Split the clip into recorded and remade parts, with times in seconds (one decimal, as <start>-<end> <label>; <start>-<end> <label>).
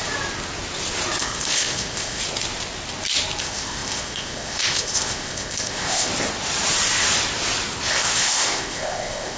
0.0-1.2 recorded; 1.2-2.2 remade; 2.2-3.4 recorded; 3.4-6.1 remade; 6.1-7.9 recorded; 7.9-9.4 remade